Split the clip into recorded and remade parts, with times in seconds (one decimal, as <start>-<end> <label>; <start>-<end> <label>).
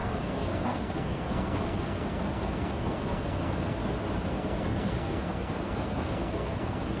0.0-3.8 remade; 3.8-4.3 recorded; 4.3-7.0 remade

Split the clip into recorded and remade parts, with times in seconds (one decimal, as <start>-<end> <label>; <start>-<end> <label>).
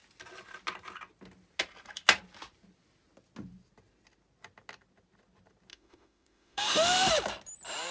0.0-5.7 recorded; 5.7-7.1 remade; 7.1-7.9 recorded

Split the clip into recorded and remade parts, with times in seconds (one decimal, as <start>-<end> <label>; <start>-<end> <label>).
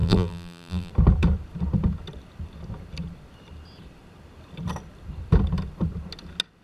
0.0-0.9 remade; 0.9-6.6 recorded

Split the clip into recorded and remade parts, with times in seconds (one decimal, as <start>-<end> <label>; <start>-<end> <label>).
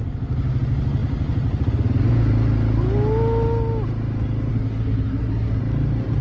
0.0-4.5 recorded; 4.5-5.6 remade; 5.6-6.2 recorded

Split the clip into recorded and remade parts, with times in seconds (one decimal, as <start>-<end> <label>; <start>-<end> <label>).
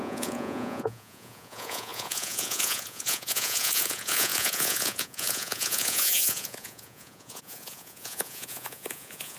0.0-9.4 remade